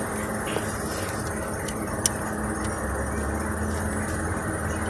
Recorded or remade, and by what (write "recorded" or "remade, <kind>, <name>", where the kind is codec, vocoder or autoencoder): recorded